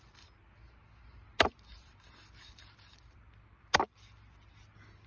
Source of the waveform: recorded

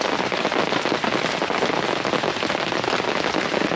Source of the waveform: recorded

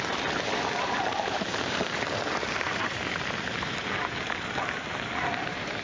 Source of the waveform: remade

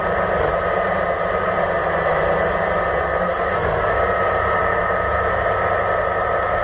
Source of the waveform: recorded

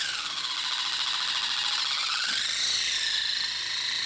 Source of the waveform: recorded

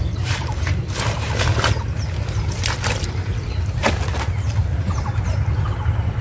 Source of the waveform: recorded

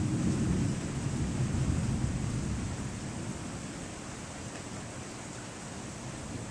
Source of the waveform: recorded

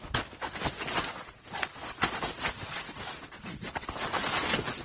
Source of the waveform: recorded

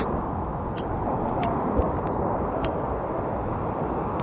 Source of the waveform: recorded